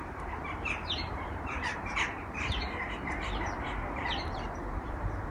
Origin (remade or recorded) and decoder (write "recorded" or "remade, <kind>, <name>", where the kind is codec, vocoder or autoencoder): remade, vocoder, BigVGAN v2